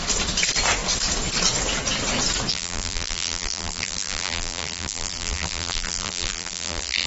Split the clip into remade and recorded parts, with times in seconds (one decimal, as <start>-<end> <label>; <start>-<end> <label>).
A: 0.0-2.5 recorded; 2.5-7.1 remade